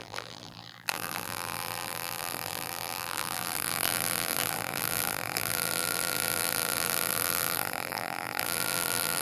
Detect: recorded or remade remade